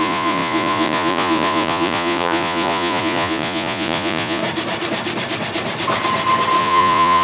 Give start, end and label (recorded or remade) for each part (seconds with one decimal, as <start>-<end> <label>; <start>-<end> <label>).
0.0-4.4 remade; 4.4-6.6 recorded; 6.6-7.2 remade